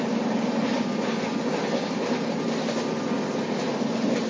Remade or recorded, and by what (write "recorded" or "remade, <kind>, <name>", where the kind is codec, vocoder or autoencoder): recorded